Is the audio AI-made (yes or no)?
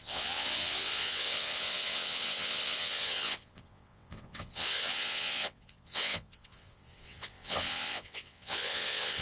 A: yes